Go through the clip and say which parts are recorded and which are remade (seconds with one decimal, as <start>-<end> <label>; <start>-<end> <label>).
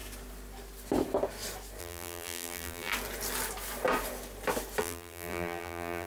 0.0-1.8 recorded; 1.8-2.9 remade; 2.9-4.8 recorded; 4.8-6.1 remade